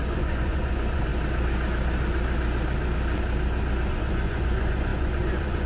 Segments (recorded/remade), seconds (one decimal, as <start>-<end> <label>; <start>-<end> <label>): 0.0-1.1 remade; 1.1-3.9 recorded; 3.9-5.7 remade